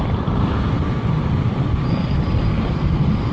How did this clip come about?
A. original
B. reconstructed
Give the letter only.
A